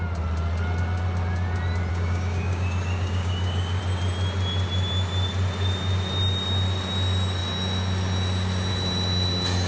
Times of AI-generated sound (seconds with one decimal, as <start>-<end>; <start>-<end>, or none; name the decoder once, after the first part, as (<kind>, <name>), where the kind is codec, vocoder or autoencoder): 1.9-3.8 (codec, DAC)